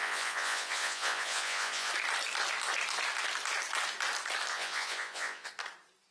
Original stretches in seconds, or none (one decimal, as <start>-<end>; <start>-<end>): 1.9-4.5; 5.5-6.1